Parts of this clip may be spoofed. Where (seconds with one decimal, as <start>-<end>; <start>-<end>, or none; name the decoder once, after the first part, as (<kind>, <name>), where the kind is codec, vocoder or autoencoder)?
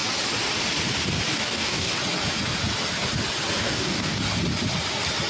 1.3-1.9 (codec, DAC); 3.6-4.2